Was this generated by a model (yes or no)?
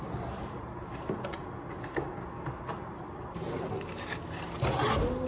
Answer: no